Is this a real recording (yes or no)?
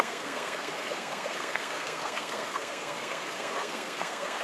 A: no